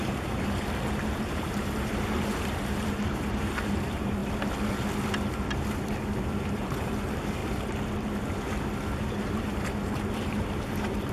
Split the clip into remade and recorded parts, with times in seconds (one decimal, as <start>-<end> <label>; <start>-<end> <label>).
0.0-4.2 remade; 4.2-6.2 recorded; 6.2-7.4 remade; 7.4-9.3 recorded; 9.3-11.1 remade